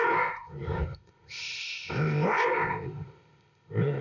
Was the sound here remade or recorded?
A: remade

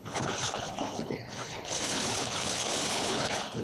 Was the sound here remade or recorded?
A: remade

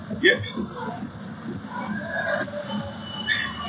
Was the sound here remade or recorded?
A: recorded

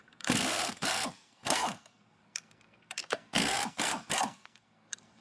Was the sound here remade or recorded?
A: remade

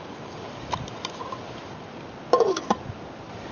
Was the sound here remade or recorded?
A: recorded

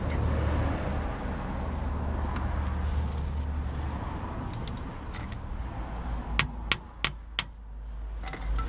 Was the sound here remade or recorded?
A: recorded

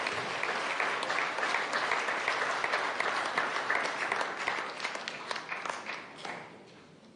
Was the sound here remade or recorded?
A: recorded